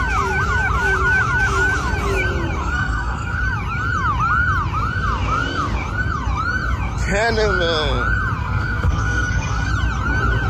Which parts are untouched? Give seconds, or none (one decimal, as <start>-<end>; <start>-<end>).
0.0-2.6; 3.4-8.4; 9.7-10.5